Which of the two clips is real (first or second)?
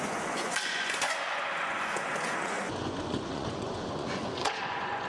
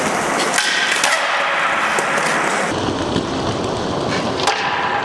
second